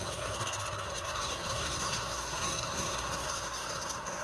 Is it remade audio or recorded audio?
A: remade